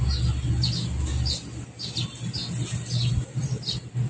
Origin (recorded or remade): recorded